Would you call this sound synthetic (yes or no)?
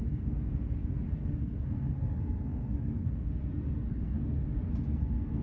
yes